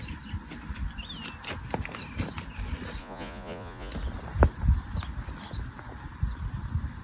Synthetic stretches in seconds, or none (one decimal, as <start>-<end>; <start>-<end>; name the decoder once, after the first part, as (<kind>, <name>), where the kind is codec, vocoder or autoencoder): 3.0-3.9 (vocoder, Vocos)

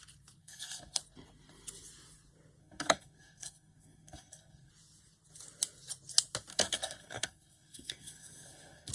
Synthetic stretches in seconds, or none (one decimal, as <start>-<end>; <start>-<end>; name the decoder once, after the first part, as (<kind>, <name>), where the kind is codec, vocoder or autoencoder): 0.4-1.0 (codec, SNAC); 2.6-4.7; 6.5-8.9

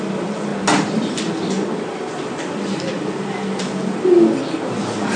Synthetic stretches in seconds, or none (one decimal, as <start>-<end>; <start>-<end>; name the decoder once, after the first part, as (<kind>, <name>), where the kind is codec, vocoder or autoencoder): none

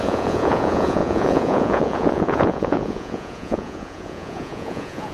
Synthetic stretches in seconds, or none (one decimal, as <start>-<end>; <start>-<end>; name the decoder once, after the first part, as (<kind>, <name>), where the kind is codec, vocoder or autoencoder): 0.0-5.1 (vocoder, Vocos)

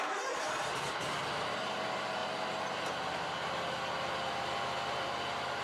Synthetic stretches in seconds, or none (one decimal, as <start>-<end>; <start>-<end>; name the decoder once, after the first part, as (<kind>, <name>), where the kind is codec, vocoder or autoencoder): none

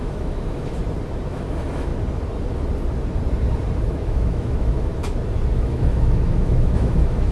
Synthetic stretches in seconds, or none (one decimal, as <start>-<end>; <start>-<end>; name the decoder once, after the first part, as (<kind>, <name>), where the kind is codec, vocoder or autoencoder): 0.0-0.8 (autoencoder, DAC-VAE); 1.3-1.9; 3.8-4.9; 5.5-7.3

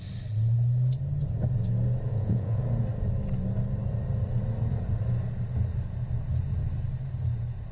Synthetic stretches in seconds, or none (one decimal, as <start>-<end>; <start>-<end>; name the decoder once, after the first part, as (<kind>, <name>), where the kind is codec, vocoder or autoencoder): 2.1-2.6 (vocoder, Vocos)